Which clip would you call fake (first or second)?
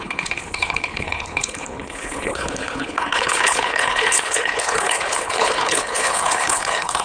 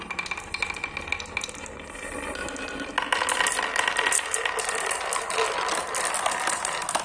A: first